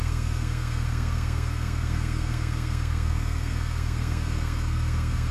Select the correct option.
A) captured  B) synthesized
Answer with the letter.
B